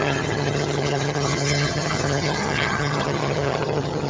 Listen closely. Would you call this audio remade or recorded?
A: remade